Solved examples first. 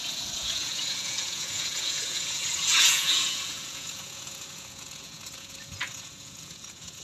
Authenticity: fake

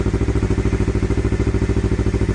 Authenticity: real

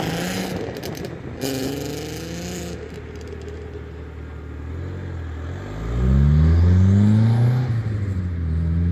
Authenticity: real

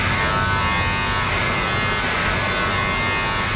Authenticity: real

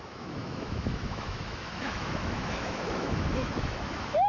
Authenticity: fake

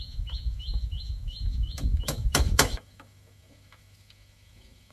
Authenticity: fake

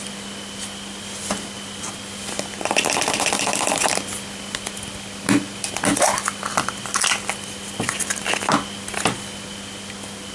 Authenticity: real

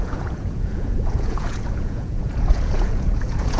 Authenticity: fake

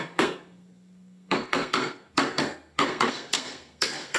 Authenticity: fake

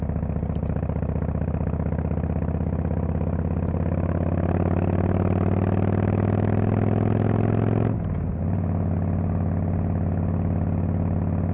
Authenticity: real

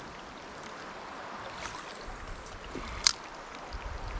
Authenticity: real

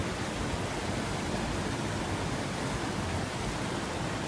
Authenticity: fake